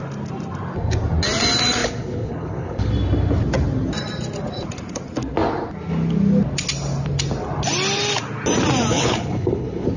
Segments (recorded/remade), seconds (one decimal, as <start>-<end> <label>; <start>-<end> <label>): 0.0-1.8 recorded; 1.8-2.9 remade; 2.9-8.9 recorded; 8.9-10.0 remade